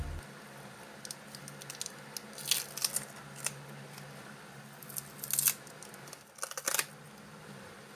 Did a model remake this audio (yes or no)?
no